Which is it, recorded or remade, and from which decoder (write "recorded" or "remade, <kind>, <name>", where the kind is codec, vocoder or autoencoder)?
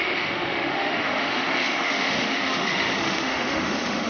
remade, autoencoder, DAC-VAE